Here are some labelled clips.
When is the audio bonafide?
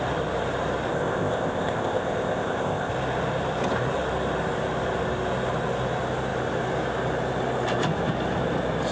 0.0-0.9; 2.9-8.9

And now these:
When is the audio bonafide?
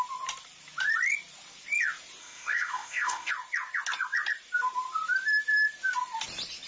0.0-2.2; 3.3-6.7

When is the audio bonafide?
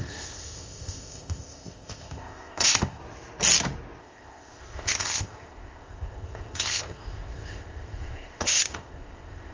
3.0-4.0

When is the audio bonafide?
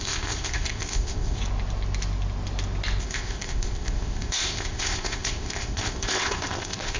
1.4-3.0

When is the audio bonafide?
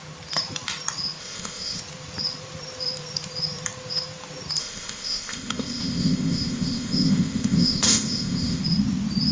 0.0-1.2; 1.8-4.6; 8.6-9.3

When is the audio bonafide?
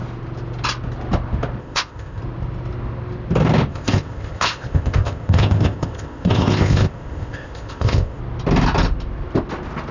0.0-1.6; 2.2-3.7; 8.2-9.9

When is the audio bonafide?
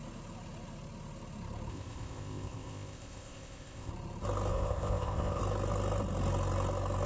0.0-1.7; 3.9-4.5; 5.4-7.1